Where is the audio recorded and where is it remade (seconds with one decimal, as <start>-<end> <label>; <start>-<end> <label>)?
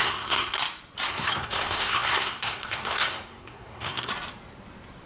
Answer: 0.0-0.6 remade; 0.6-1.1 recorded; 1.1-4.1 remade; 4.1-5.1 recorded